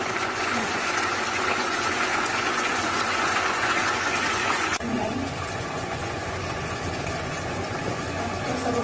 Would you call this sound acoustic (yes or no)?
no